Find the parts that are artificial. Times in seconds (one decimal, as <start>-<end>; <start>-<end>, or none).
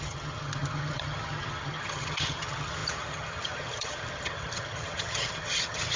0.0-6.0